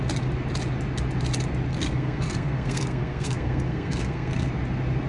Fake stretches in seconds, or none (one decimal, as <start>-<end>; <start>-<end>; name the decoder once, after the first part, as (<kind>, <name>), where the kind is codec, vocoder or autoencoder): 1.7-4.5 (codec, SNAC)